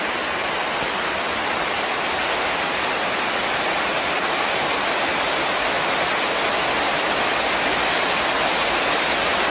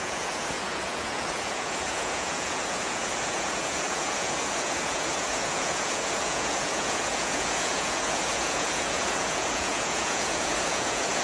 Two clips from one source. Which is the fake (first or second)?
second